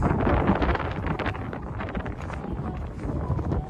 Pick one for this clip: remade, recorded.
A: remade